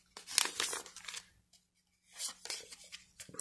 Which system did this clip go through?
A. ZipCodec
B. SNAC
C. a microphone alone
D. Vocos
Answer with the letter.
C